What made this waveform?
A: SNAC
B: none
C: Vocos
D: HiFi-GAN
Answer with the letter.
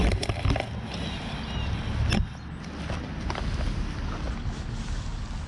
B